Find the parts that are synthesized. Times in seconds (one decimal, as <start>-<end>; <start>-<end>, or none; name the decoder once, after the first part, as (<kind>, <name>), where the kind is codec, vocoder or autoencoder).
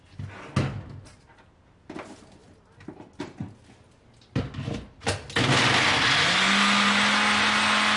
none